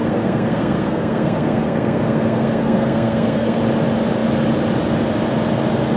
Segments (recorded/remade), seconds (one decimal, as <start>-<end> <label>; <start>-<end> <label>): 0.0-3.6 remade; 3.6-6.0 recorded